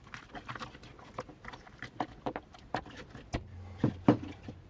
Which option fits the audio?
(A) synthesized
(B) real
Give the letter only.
B